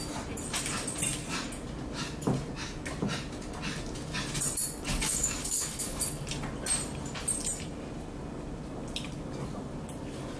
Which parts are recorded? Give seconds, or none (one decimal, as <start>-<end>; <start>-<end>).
0.0-4.9; 6.0-10.4